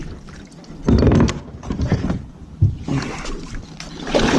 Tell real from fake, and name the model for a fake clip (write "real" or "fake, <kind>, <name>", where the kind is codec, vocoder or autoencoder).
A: real